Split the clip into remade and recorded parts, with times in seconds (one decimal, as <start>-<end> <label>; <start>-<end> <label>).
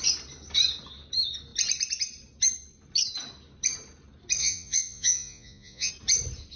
0.0-4.4 recorded; 4.4-5.9 remade; 5.9-6.6 recorded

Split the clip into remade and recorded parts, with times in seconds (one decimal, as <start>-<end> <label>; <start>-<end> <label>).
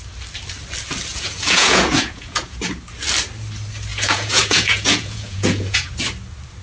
0.0-1.1 recorded; 1.1-2.6 remade; 2.6-3.9 recorded; 3.9-5.9 remade; 5.9-6.6 recorded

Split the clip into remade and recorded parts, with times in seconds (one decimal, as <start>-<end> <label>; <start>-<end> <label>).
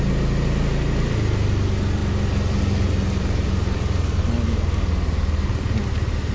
0.0-6.3 recorded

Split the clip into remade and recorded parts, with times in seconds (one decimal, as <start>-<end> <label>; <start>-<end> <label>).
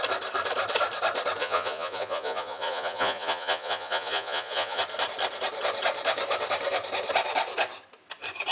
0.0-1.4 recorded; 1.4-4.8 remade; 4.8-8.5 recorded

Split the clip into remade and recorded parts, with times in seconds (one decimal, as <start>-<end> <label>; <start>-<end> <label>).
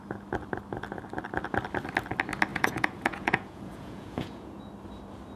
0.0-2.5 recorded; 2.5-4.7 remade; 4.7-5.4 recorded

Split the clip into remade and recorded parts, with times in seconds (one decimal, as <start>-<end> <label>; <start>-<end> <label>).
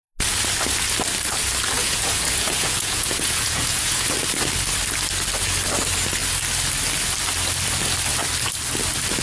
0.0-1.8 recorded; 1.8-4.1 remade; 4.1-9.2 recorded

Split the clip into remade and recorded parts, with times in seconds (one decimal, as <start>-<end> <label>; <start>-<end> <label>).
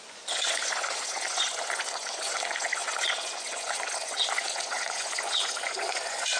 0.0-6.4 remade